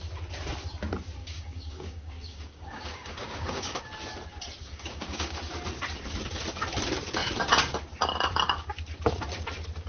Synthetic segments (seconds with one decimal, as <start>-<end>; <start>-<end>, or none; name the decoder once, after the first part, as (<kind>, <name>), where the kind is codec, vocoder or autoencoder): 1.2-3.8 (codec, DAC); 4.6-5.4